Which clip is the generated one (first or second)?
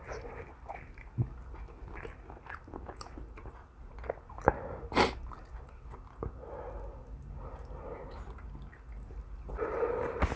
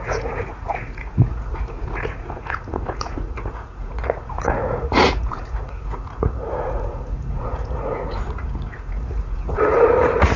second